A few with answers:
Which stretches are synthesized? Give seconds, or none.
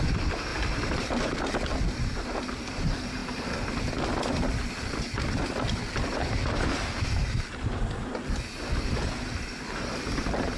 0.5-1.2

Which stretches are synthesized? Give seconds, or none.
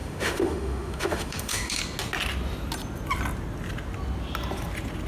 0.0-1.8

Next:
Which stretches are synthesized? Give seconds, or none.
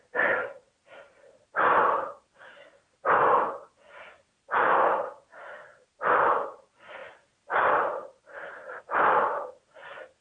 none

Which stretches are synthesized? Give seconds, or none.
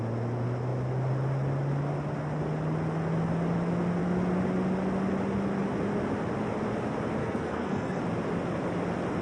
7.2-8.0